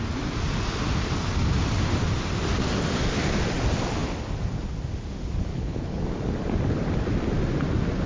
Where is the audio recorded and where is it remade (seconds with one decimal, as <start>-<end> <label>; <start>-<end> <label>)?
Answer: 0.0-5.5 recorded; 5.5-6.0 remade; 6.0-8.1 recorded